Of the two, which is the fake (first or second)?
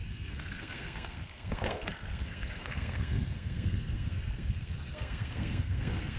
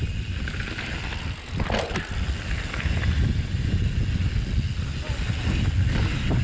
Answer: first